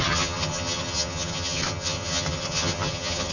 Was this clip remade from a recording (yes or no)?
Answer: yes